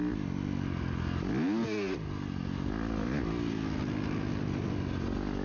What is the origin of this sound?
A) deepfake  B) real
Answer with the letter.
B